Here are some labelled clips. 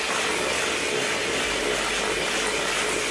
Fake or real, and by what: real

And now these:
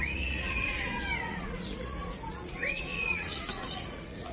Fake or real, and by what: fake, vocoder, Vocos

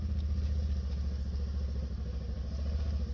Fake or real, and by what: real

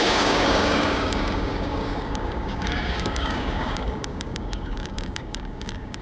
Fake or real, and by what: fake, codec, DAC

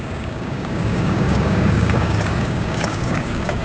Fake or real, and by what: fake, codec, DAC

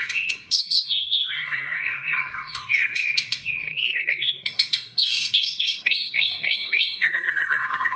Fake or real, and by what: fake, codec, SNAC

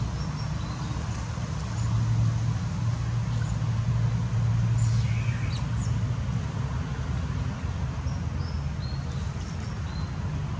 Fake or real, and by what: real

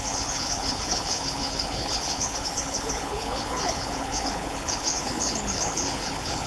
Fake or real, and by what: fake, codec, HILCodec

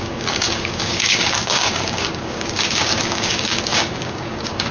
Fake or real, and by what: fake, codec, DAC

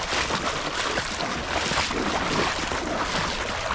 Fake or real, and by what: real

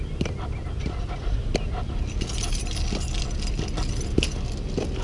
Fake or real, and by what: real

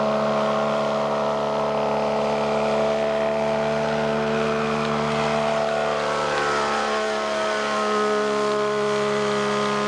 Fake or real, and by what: real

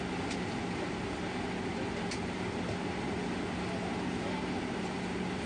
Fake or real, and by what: real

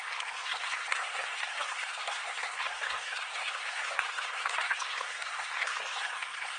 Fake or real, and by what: fake, codec, SNAC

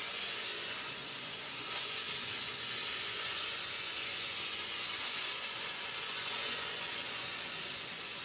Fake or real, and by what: fake, vocoder, Vocos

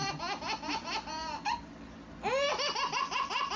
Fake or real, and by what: real